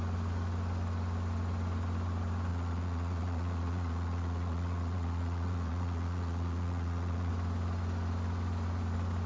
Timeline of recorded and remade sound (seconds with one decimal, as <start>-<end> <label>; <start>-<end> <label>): 0.0-2.5 recorded; 2.5-7.3 remade; 7.3-9.3 recorded